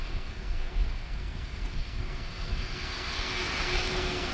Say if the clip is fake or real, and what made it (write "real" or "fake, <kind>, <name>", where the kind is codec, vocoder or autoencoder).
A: fake, codec, SNAC